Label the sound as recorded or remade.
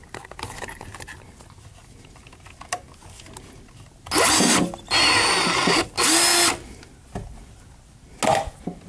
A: recorded